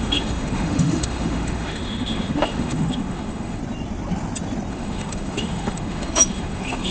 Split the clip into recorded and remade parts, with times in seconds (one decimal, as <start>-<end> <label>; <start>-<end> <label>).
0.0-3.6 remade; 3.6-4.7 recorded; 4.7-6.9 remade